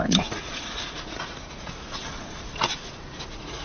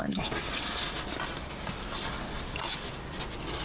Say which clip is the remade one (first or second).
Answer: first